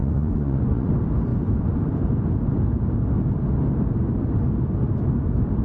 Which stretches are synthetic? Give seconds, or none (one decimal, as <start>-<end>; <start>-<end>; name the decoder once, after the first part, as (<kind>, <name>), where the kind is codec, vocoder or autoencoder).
0.0-0.9 (vocoder, Vocos)